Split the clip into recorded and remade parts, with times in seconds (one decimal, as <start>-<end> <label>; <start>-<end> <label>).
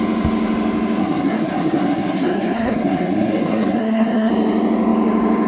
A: 0.0-1.0 recorded; 1.0-4.3 remade; 4.3-5.5 recorded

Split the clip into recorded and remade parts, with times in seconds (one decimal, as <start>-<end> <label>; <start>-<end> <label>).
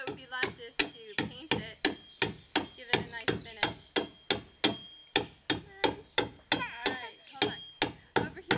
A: 0.0-8.6 recorded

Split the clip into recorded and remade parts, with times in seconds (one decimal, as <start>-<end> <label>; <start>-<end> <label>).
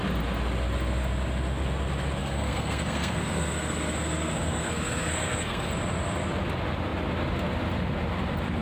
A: 0.0-2.2 recorded; 2.2-5.7 remade; 5.7-8.6 recorded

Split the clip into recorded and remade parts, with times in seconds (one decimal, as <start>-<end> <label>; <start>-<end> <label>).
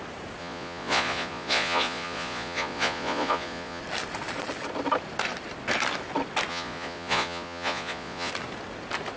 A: 0.0-0.4 recorded; 0.4-3.8 remade; 3.8-6.5 recorded; 6.5-8.3 remade; 8.3-9.2 recorded